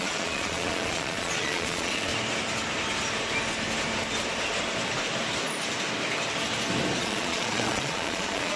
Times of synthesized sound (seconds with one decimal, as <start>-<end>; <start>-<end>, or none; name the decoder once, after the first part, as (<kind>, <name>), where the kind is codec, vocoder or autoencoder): 0.0-2.1 (vocoder, Vocos); 7.0-8.6